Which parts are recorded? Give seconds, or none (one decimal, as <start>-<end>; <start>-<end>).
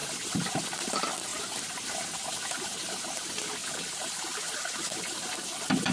0.6-1.3; 3.2-3.6; 5.3-5.9